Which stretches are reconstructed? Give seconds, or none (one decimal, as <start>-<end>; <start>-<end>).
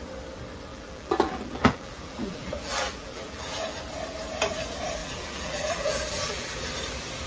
0.7-3.8; 5.0-6.7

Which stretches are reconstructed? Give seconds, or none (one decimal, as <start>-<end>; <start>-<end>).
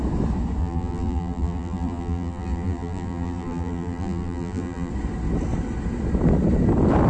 0.6-4.9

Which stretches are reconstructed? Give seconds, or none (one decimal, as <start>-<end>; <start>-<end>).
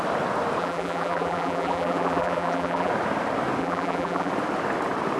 0.6-2.9; 3.6-4.3